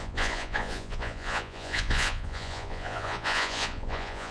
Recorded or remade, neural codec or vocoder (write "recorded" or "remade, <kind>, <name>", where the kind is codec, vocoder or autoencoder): remade, vocoder, Vocos